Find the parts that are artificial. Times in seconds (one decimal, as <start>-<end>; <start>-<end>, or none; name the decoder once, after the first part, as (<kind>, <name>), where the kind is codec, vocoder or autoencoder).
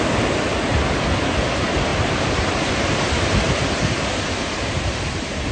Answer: 1.9-5.5 (vocoder, BigVGAN v2)